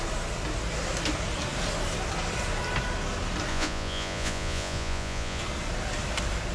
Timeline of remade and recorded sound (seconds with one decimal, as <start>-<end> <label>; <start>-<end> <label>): 0.0-3.5 recorded; 3.5-5.4 remade; 5.4-6.5 recorded